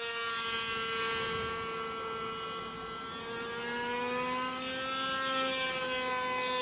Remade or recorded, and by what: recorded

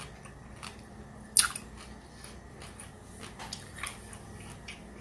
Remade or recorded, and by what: recorded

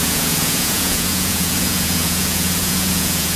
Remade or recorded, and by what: remade, vocoder, Vocos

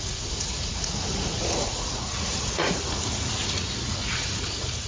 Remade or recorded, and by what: remade, vocoder, Vocos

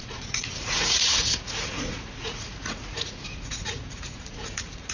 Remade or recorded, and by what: remade, vocoder, Vocos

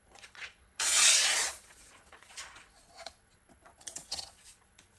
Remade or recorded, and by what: remade, vocoder, Vocos